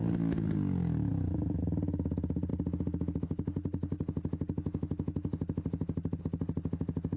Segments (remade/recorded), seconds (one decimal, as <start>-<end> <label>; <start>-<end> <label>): 0.0-7.2 recorded